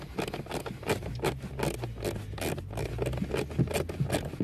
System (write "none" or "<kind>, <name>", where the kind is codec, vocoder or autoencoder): none